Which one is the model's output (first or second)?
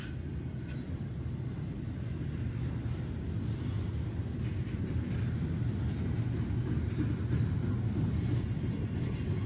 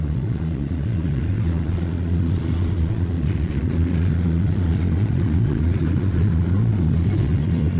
second